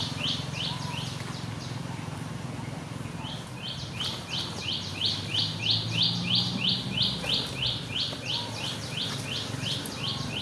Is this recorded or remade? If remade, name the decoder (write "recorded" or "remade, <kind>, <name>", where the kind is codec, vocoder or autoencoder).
recorded